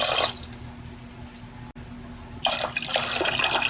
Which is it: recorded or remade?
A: recorded